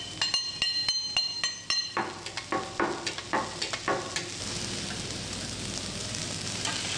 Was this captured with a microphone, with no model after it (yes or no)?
yes